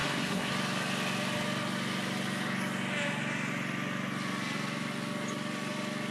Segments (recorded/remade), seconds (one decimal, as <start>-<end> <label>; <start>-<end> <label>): 0.0-0.5 remade; 0.5-6.1 recorded